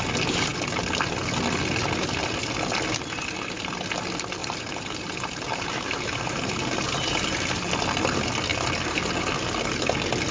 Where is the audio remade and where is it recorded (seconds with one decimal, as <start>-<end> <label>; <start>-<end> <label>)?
0.0-4.4 recorded; 4.4-7.7 remade; 7.7-10.3 recorded